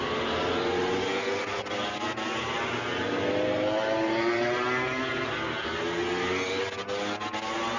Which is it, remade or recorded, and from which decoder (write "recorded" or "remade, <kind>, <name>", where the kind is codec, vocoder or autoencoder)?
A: recorded